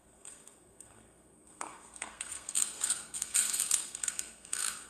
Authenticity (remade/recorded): remade